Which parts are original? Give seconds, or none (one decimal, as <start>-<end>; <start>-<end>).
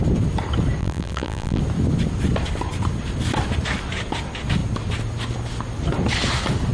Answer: 0.0-0.8; 1.6-6.7